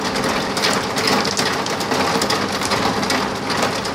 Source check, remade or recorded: recorded